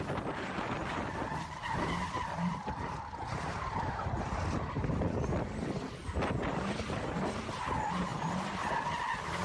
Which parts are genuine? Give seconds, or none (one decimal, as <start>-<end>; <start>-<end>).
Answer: 0.0-9.4